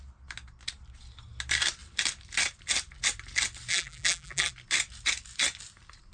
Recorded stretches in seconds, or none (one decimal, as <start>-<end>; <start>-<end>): 0.0-3.7; 4.5-6.1